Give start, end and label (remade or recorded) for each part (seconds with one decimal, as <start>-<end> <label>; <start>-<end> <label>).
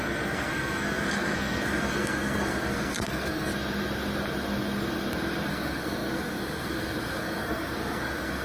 0.0-3.5 remade; 3.5-5.5 recorded; 5.5-8.4 remade